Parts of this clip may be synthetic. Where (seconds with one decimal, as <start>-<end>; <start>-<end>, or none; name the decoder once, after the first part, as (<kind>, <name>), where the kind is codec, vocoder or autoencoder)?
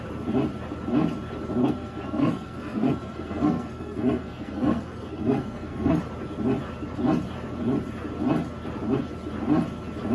1.6-6.0 (codec, SNAC)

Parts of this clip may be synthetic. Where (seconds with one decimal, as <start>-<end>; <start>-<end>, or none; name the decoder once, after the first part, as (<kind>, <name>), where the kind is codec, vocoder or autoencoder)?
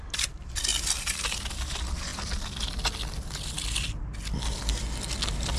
none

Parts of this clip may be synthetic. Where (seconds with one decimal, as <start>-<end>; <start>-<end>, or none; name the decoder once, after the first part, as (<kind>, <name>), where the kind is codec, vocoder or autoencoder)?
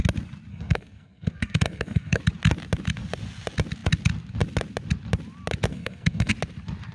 0.5-2.2 (codec, SNAC); 5.7-6.3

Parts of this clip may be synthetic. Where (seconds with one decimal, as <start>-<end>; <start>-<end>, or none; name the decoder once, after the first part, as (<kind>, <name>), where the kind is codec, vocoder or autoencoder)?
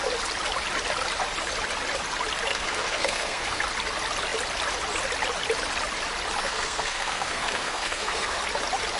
2.5-3.6 (codec, SNAC); 6.4-8.4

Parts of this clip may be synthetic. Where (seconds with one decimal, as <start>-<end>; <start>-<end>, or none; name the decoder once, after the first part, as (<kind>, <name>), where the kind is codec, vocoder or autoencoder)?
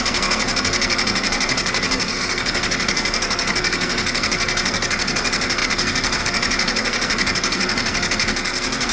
0.0-8.9 (codec, SNAC)